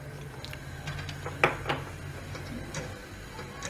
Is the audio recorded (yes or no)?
yes